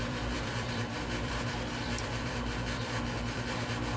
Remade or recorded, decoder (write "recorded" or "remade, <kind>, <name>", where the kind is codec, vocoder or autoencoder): remade, vocoder, BigVGAN v2